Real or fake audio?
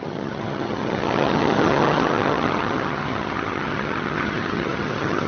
fake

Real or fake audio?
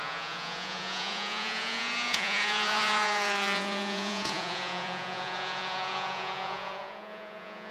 fake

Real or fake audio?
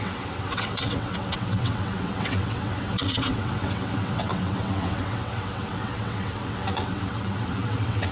fake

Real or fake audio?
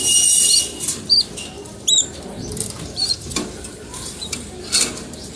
fake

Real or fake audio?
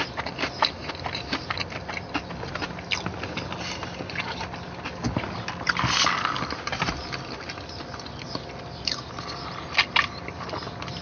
real